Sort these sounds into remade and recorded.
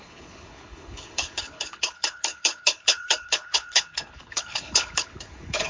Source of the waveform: remade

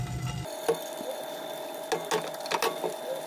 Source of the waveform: recorded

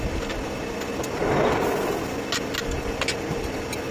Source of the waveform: recorded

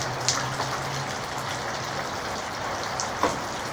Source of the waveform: recorded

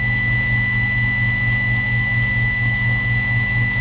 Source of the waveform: remade